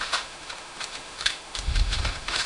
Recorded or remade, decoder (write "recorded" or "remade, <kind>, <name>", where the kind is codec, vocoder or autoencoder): remade, autoencoder, DAC-VAE